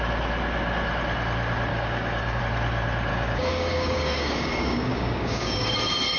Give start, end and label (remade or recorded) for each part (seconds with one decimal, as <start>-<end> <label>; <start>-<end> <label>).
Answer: 0.0-1.7 recorded; 1.7-2.4 remade; 2.4-3.1 recorded; 3.1-5.8 remade; 5.8-6.2 recorded